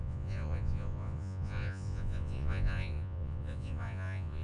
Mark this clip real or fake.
fake